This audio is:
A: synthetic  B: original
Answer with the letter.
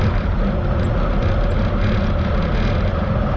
B